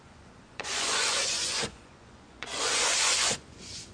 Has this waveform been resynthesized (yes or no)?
yes